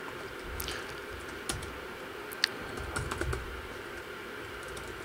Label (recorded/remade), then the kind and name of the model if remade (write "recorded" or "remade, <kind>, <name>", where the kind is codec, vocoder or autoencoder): recorded